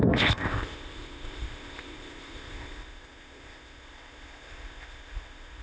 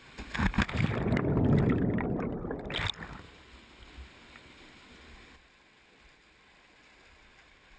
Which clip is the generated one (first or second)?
first